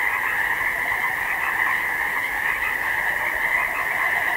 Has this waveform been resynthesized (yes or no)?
no